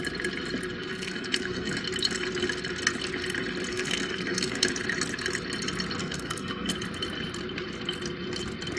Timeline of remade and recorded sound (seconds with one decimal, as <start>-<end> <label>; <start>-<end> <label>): 0.0-0.8 recorded; 0.8-1.7 remade; 1.7-3.7 recorded; 3.7-4.7 remade; 4.7-6.0 recorded; 6.0-6.7 remade; 6.7-8.8 recorded